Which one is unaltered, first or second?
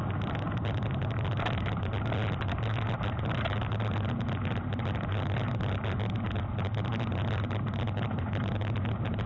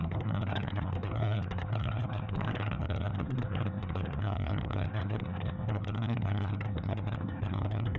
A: first